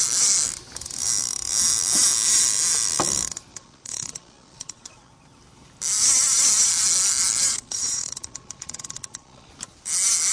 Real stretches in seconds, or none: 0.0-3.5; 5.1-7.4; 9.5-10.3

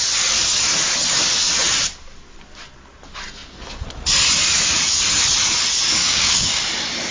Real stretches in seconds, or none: 0.0-6.0; 6.6-7.1

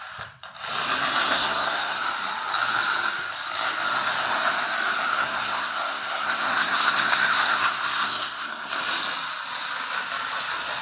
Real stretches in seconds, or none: 0.0-1.2; 2.0-5.1; 8.8-10.8

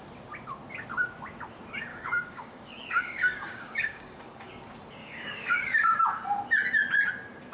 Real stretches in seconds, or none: 0.0-1.9; 4.5-5.0; 6.0-7.5

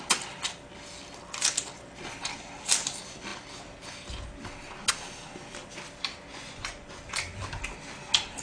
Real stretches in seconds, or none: 0.0-6.3; 7.0-8.4

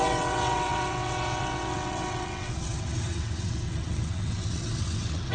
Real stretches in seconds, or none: none